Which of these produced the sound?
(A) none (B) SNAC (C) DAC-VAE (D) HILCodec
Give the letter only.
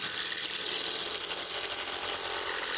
A